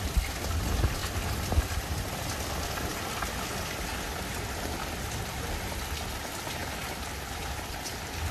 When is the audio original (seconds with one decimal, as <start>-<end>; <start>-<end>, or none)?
0.0-8.3